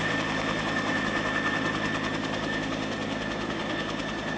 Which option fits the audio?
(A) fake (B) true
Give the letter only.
B